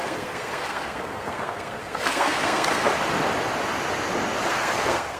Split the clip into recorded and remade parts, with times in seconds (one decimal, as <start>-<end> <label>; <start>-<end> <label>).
0.0-2.9 remade; 2.9-4.5 recorded; 4.5-5.2 remade

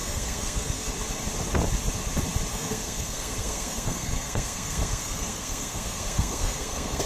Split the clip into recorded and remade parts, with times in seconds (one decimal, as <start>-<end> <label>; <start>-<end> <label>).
0.0-0.9 remade; 0.9-2.5 recorded; 2.5-7.1 remade

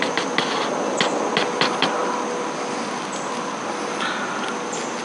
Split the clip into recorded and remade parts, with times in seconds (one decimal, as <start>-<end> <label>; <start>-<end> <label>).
0.0-5.0 recorded

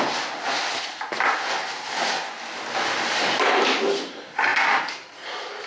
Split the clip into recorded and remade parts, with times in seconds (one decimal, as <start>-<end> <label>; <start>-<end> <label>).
0.0-5.7 recorded

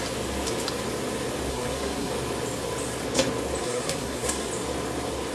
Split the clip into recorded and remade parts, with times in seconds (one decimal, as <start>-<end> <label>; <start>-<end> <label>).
0.0-1.5 recorded; 1.5-2.1 remade; 2.1-3.6 recorded; 3.6-4.5 remade; 4.5-5.3 recorded

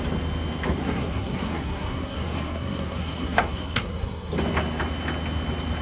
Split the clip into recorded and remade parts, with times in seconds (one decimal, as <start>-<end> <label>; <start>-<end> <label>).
0.0-0.8 recorded; 0.8-4.3 remade; 4.3-5.8 recorded

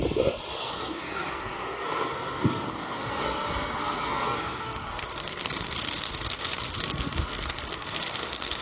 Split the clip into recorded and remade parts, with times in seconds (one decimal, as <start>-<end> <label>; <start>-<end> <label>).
0.0-0.6 recorded; 0.6-8.6 remade

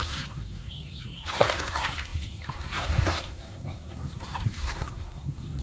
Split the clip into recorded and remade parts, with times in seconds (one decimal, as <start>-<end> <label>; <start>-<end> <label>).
0.0-5.6 remade